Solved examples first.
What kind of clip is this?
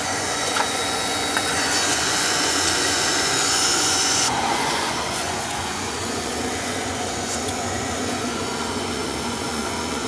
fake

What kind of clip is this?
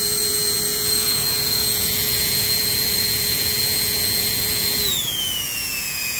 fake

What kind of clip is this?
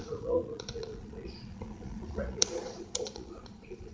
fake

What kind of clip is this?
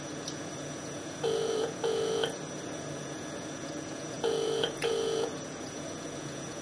fake